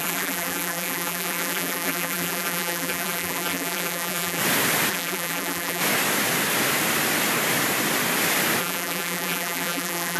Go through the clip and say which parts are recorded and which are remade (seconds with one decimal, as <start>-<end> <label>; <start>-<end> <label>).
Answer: 0.0-4.4 remade; 4.4-4.9 recorded; 4.9-5.8 remade; 5.8-8.6 recorded; 8.6-10.2 remade